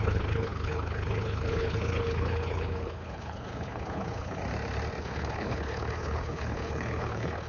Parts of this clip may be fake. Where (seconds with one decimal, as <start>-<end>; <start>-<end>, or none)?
0.0-4.4; 5.0-7.5